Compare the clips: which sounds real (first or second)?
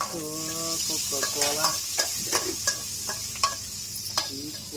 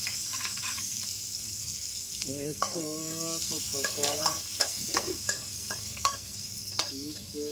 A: first